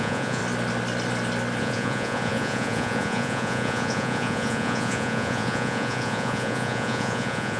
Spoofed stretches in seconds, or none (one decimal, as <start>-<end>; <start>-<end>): 0.0-0.4; 1.6-7.6